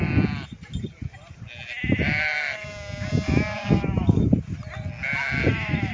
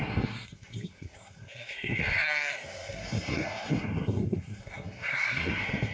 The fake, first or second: second